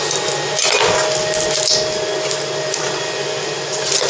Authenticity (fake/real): real